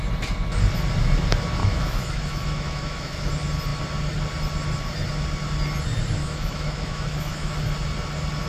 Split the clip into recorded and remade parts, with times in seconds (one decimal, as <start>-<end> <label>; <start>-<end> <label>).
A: 0.0-1.6 recorded; 1.6-3.3 remade; 3.3-6.2 recorded; 6.2-7.6 remade; 7.6-8.5 recorded